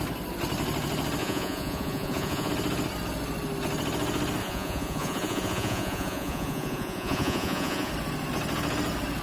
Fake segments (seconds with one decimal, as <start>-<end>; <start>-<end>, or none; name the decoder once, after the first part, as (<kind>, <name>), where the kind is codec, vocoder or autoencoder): 1.2-2.5 (vocoder, Vocos); 4.4-7.9